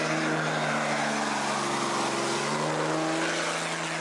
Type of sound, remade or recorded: recorded